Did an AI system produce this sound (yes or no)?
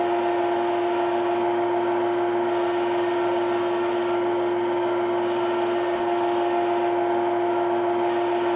no